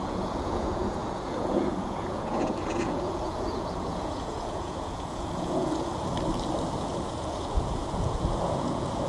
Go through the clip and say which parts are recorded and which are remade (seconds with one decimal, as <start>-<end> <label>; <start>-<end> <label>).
0.0-5.9 remade; 5.9-6.9 recorded; 6.9-9.1 remade